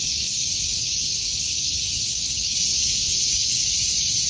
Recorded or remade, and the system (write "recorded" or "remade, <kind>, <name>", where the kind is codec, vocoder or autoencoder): remade, codec, DAC